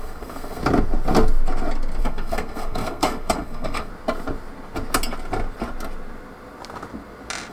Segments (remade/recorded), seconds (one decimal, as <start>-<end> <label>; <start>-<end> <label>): 0.0-0.6 remade; 0.6-2.0 recorded; 2.0-3.9 remade; 3.9-7.5 recorded